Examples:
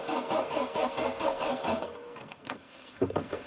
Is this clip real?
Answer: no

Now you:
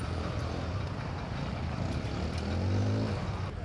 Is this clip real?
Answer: yes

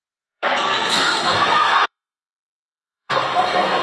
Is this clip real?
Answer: no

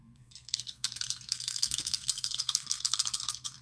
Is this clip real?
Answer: no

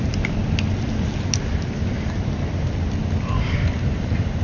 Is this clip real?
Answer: yes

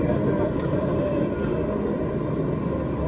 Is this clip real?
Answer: yes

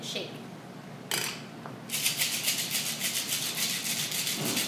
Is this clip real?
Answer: yes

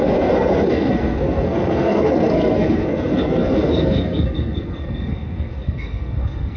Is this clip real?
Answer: no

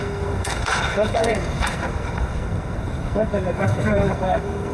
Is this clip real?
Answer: no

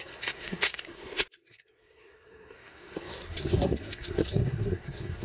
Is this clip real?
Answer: no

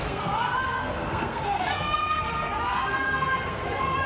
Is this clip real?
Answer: no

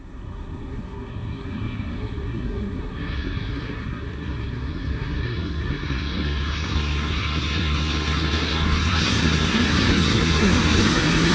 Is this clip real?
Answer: no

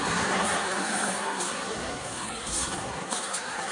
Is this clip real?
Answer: no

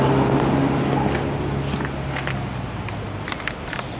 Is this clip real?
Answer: yes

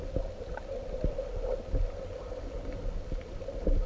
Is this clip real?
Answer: yes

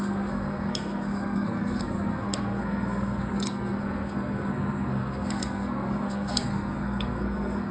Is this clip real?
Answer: no